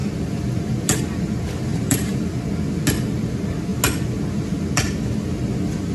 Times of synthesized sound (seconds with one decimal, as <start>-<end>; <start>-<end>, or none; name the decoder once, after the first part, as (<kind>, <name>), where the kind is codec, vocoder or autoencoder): 1.7-2.2 (vocoder, BigVGAN v2)